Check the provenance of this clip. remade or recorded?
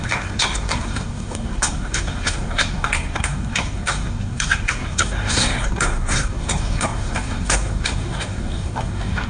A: remade